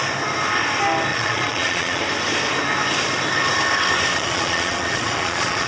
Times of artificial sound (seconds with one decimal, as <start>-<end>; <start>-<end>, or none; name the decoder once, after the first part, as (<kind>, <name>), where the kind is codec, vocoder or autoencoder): 1.1-2.0 (vocoder, Vocos); 4.1-5.7